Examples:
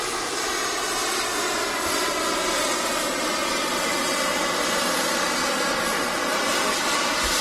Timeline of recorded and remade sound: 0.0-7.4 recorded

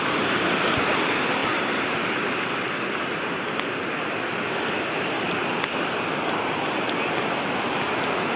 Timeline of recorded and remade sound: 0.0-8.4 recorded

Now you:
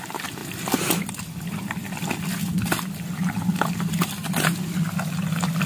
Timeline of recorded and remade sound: 0.0-5.7 recorded

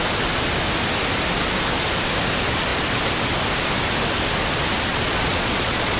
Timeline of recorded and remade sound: 0.0-4.9 recorded; 4.9-6.0 remade

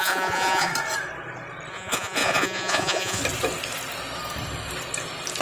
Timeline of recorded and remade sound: 0.0-0.7 remade; 0.7-1.7 recorded; 1.7-3.2 remade; 3.2-5.4 recorded